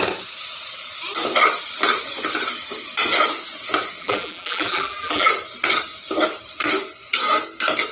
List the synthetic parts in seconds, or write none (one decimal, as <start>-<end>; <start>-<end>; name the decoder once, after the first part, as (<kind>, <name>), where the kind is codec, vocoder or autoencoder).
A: 4.0-5.3 (vocoder, BigVGAN v2)